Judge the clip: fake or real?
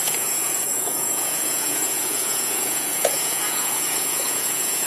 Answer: fake